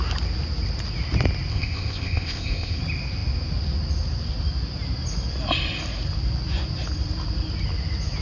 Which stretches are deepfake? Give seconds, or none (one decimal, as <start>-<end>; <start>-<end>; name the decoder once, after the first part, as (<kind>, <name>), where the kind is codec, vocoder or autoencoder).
1.5-2.8 (codec, ZipCodec)